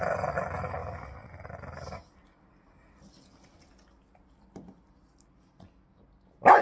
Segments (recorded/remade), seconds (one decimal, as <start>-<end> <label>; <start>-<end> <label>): 0.0-6.6 recorded